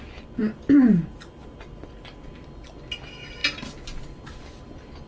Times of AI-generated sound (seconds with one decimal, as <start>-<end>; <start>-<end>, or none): none